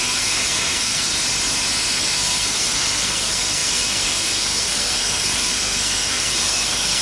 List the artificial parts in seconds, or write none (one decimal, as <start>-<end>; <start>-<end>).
0.0-1.1; 1.9-7.0